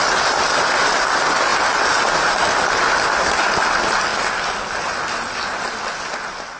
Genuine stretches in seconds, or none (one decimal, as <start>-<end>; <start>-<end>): 0.0-6.6